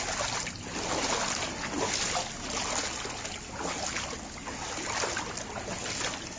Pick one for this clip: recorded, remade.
recorded